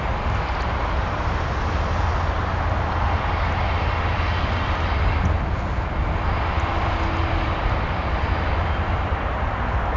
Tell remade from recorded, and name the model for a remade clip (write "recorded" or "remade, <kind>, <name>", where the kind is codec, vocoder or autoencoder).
recorded